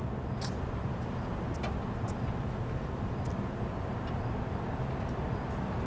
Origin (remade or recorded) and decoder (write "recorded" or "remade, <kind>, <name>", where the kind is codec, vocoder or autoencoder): recorded